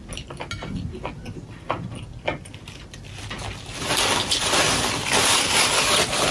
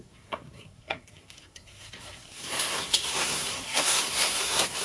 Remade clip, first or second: second